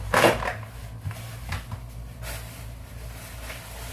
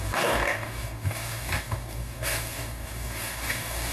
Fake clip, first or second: second